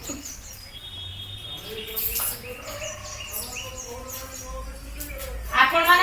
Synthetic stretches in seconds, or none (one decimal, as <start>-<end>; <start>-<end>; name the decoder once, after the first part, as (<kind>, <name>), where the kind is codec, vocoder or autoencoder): 0.0-0.8 (vocoder, BigVGAN v2); 2.4-3.0; 5.1-6.0